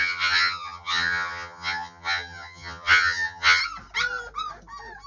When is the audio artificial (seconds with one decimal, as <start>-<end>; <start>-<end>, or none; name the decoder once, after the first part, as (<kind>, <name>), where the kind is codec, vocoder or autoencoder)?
0.0-3.6 (vocoder, HiFi-GAN)